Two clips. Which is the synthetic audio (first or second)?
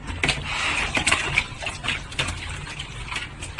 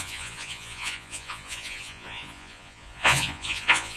second